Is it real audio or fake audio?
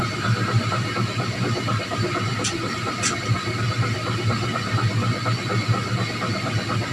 real